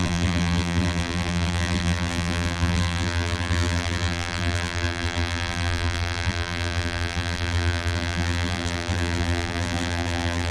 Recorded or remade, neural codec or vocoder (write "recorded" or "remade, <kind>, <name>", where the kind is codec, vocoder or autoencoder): remade, vocoder, BigVGAN v2